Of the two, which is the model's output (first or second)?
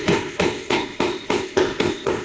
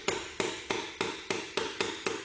first